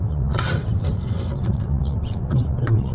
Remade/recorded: remade